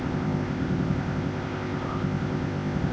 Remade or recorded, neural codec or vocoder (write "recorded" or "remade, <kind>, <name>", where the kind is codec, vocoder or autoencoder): remade, codec, ZipCodec